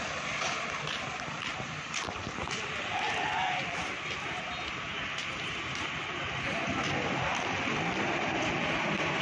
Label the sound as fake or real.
real